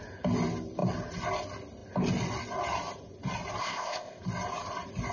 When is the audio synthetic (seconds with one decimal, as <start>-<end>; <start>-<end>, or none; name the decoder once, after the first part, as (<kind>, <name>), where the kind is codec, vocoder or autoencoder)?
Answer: 3.6-4.2 (codec, ZipCodec)